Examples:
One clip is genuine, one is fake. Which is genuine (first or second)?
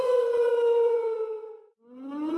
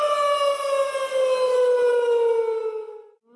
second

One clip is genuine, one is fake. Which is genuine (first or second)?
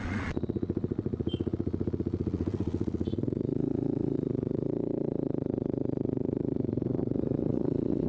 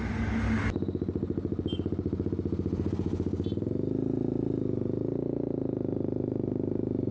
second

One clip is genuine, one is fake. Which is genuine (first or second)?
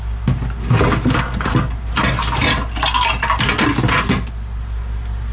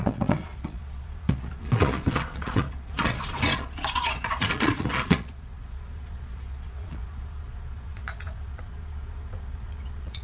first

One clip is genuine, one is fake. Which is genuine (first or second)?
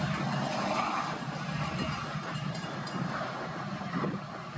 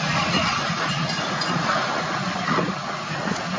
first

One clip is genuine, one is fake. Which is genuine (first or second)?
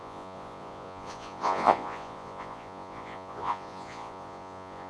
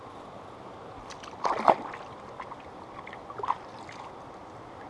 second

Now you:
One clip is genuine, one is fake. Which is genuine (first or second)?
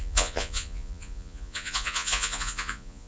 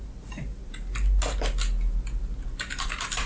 second